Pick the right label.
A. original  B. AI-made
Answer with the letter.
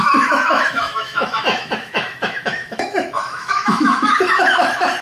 B